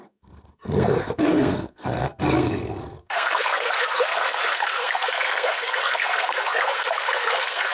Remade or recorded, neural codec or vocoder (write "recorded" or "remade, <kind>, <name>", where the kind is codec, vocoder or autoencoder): remade, codec, SNAC